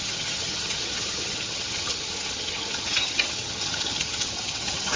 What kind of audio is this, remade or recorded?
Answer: remade